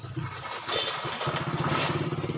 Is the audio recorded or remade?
recorded